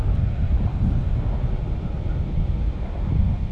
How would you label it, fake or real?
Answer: real